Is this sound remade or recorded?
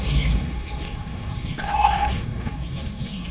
remade